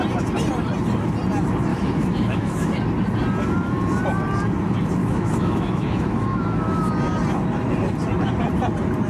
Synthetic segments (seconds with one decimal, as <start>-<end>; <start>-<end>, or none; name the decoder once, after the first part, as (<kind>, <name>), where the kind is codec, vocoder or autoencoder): 1.7-2.7 (autoencoder, DAC-VAE); 5.0-6.9